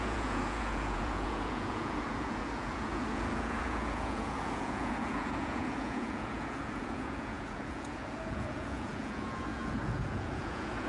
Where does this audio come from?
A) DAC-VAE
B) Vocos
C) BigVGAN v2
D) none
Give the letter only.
B